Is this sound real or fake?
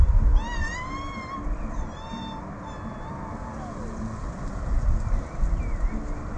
real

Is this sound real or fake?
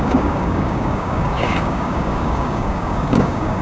fake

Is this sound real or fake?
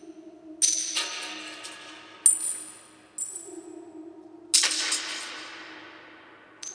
real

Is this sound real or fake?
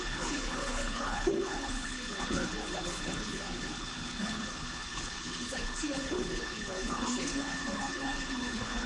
fake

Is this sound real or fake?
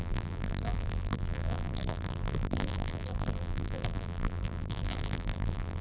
fake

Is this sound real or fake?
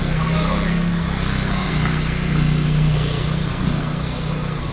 fake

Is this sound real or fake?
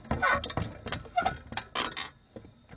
real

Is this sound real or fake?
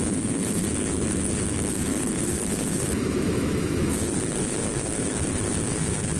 fake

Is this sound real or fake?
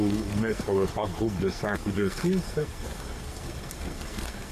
fake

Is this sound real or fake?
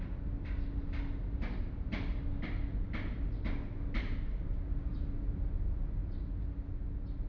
real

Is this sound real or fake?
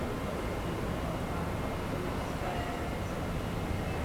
real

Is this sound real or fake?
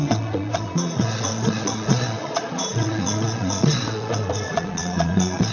fake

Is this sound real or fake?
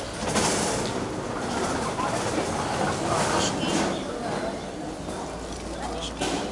real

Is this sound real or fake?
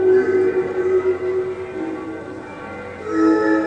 real